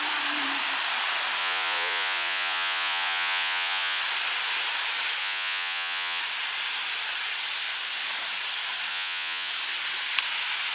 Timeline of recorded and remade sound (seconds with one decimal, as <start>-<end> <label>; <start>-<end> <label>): 0.0-1.4 recorded; 1.4-4.0 remade; 4.0-5.2 recorded; 5.2-6.2 remade; 6.2-8.9 recorded; 8.9-9.5 remade; 9.5-10.7 recorded